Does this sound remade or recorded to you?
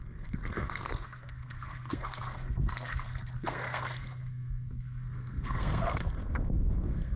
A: remade